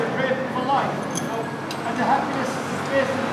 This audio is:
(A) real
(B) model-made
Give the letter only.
A